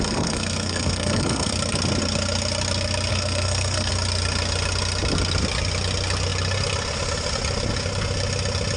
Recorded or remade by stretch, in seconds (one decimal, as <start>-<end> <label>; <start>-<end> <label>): 0.0-1.5 remade; 1.5-3.1 recorded; 3.1-3.9 remade; 3.9-8.8 recorded